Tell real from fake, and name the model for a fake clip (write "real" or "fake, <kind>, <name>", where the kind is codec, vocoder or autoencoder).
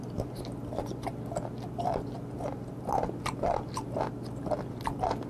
real